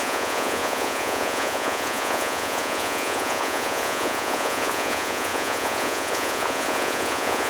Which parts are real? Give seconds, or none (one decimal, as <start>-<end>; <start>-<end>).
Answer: none